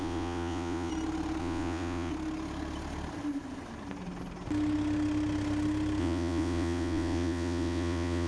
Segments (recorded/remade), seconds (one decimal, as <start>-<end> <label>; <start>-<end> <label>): 0.0-0.9 remade; 0.9-1.4 recorded; 1.4-2.1 remade; 2.1-6.0 recorded; 6.0-8.3 remade